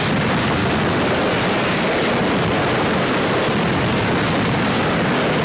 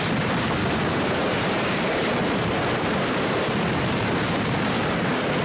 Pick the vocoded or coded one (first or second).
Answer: second